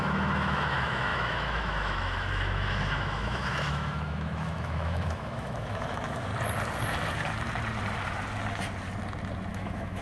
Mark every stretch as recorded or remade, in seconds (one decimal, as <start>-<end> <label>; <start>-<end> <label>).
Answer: 0.0-6.3 remade; 6.3-9.5 recorded; 9.5-10.0 remade